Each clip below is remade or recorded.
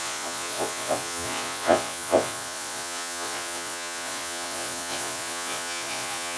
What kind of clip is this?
remade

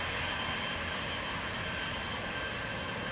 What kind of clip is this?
recorded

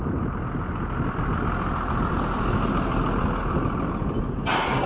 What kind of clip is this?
recorded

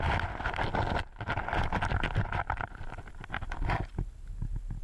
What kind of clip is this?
recorded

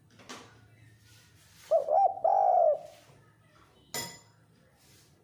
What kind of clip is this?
recorded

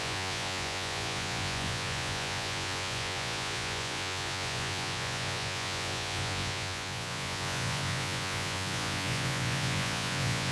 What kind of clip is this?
remade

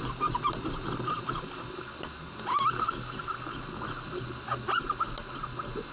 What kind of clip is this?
recorded